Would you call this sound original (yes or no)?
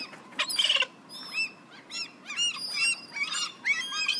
yes